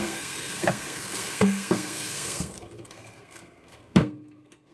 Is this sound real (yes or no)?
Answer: no